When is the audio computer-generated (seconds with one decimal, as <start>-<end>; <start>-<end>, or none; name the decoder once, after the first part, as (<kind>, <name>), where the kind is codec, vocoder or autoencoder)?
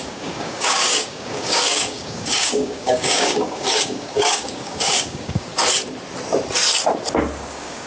0.0-5.5 (codec, DAC); 7.5-7.9